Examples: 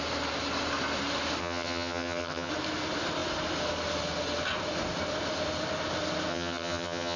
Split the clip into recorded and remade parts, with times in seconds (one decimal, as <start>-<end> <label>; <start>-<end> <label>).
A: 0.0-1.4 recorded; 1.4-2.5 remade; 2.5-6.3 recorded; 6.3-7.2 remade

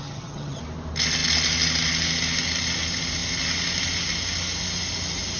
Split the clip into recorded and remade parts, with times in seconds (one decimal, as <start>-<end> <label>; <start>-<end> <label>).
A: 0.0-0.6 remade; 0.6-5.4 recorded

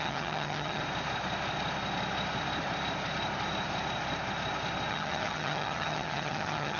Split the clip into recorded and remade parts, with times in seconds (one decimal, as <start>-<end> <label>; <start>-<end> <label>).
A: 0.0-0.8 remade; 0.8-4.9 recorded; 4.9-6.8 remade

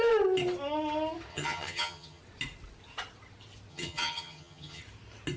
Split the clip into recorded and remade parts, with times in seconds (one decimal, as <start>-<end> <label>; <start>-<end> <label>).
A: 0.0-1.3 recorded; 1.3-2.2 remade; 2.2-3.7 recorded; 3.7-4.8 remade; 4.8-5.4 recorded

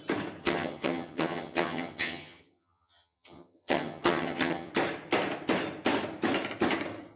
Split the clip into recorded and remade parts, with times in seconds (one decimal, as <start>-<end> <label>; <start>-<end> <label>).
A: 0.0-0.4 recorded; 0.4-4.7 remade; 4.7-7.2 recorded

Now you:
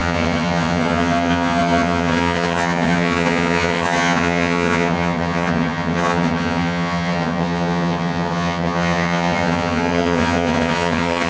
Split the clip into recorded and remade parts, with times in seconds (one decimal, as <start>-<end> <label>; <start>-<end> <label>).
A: 0.0-11.3 remade

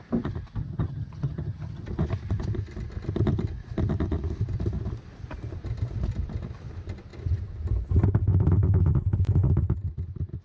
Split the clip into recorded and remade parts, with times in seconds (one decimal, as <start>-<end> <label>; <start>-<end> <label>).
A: 0.0-0.6 recorded; 0.6-1.8 remade; 1.8-10.4 recorded